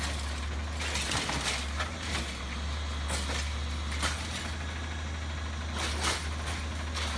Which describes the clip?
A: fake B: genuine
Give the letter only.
B